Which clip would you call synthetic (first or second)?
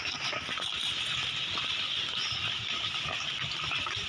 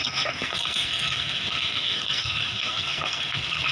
second